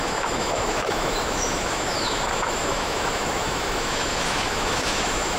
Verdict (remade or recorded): remade